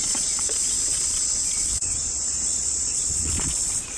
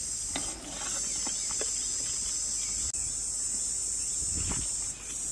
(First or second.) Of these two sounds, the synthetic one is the first